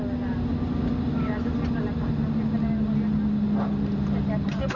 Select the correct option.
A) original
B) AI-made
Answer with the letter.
A